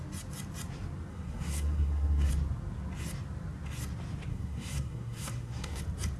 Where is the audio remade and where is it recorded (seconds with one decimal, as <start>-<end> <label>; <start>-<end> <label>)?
0.0-1.1 recorded; 1.1-2.3 remade; 2.3-4.3 recorded; 4.3-5.8 remade; 5.8-6.2 recorded